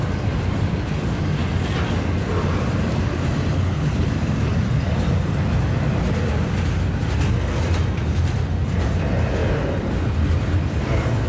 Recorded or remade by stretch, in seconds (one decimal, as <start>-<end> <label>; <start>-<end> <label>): 0.0-3.5 recorded; 3.5-4.1 remade; 4.1-11.3 recorded